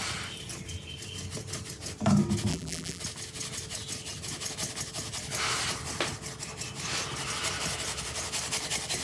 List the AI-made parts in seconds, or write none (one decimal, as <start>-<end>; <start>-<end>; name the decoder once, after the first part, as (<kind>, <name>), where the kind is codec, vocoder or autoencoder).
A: 2.5-3.0 (vocoder, BigVGAN v2)